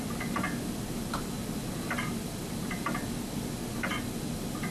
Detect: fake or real real